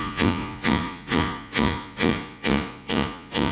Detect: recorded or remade remade